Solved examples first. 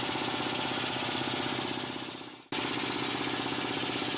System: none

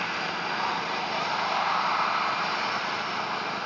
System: none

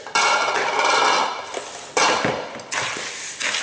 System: none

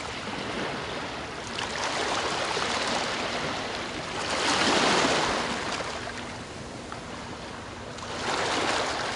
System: none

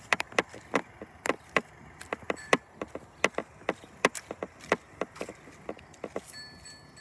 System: none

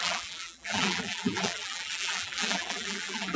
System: vocoder, BigVGAN v2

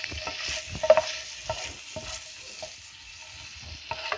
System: none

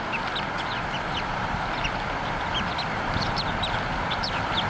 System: vocoder, BigVGAN v2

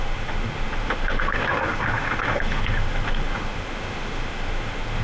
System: autoencoder, DAC-VAE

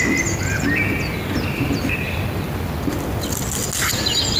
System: none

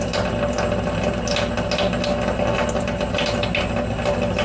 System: none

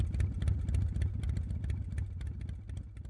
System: none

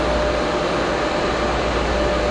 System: none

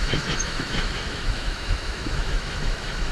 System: autoencoder, DAC-VAE